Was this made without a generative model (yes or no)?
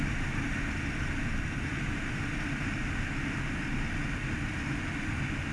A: yes